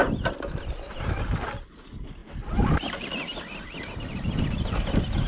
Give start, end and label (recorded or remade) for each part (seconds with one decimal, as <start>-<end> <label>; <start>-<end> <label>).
0.0-5.3 recorded